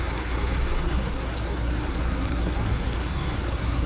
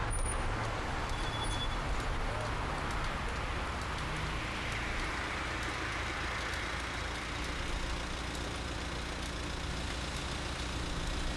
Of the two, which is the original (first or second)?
second